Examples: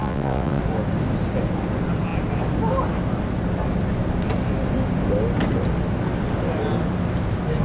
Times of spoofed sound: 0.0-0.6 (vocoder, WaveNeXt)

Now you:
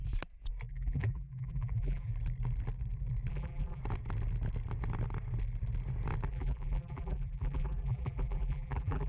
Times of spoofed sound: 0.7-2.1 (vocoder, BigVGAN v2); 3.3-3.8; 6.3-9.1

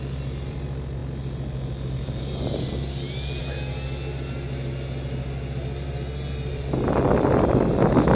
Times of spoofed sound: none